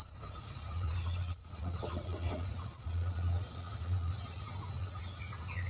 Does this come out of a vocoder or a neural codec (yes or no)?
yes